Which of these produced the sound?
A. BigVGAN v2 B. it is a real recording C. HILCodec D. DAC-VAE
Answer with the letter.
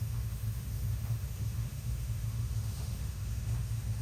D